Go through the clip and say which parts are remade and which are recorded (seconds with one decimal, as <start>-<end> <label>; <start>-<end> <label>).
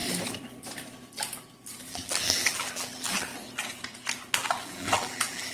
0.0-1.8 recorded; 1.8-3.3 remade; 3.3-4.3 recorded; 4.3-5.5 remade